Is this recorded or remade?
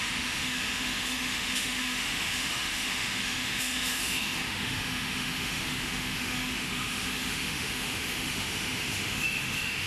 remade